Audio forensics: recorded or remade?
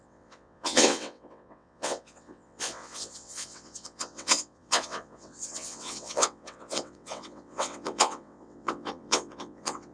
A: remade